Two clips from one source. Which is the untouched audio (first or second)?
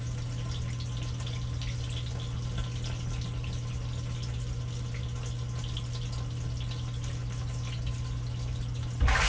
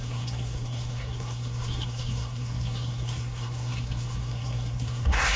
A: first